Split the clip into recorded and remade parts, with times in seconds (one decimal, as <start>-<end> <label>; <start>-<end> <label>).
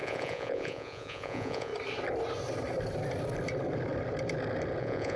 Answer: 0.0-1.7 remade; 1.7-4.8 recorded; 4.8-5.2 remade